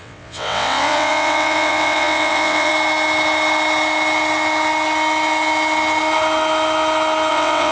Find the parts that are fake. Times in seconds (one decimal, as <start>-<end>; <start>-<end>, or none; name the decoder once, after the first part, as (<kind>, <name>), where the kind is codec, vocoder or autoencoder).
0.0-2.7 (vocoder, WaveNeXt); 7.3-7.7